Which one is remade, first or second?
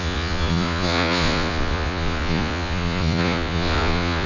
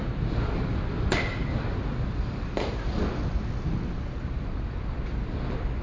first